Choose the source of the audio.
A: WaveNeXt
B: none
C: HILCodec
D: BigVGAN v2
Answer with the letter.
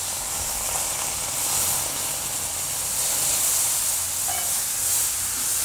B